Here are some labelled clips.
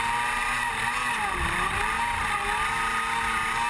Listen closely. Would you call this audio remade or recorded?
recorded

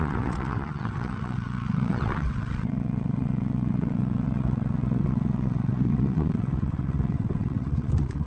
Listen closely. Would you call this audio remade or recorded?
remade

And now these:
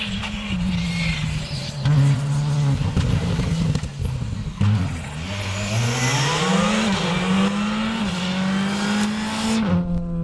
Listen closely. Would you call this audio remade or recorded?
recorded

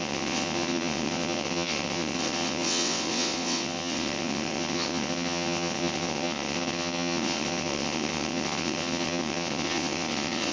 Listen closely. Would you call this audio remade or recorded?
remade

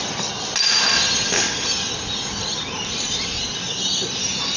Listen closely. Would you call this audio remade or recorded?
recorded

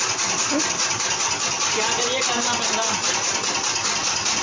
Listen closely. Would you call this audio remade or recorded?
recorded